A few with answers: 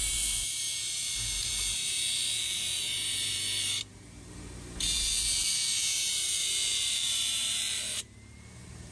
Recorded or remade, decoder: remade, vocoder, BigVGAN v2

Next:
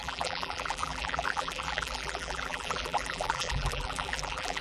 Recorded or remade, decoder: remade, vocoder, BigVGAN v2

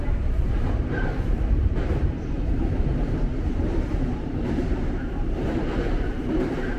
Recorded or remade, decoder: remade, vocoder, BigVGAN v2